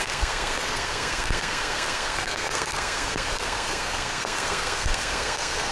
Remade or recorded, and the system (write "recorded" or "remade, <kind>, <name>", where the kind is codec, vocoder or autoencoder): remade, codec, SNAC